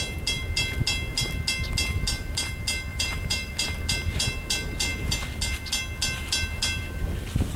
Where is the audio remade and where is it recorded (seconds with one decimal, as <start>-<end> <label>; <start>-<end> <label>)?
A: 0.0-2.9 recorded; 2.9-3.5 remade; 3.5-7.6 recorded